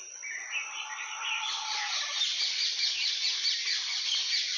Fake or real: real